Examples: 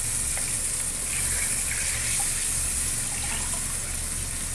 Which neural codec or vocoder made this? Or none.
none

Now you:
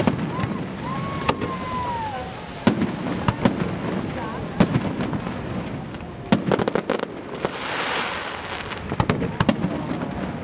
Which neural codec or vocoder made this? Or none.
none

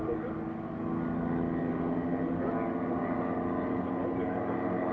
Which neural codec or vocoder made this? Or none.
none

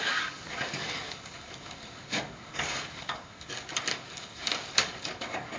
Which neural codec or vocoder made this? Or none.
codec, DAC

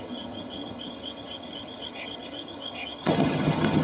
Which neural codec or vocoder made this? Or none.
vocoder, HiFi-GAN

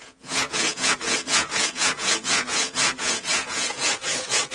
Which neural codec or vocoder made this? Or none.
vocoder, Vocos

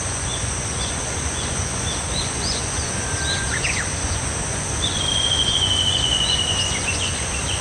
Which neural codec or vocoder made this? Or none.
vocoder, Vocos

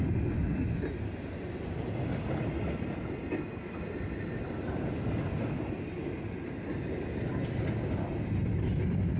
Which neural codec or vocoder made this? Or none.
none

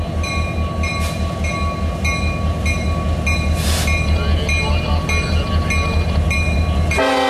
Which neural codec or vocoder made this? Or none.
none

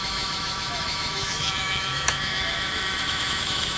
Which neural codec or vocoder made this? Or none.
autoencoder, DAC-VAE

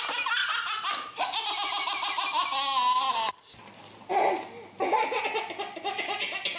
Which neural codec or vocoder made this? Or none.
none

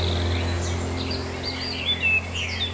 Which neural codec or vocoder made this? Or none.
none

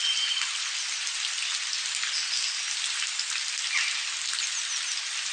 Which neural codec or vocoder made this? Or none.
none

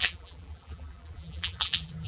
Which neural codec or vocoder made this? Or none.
vocoder, BigVGAN v2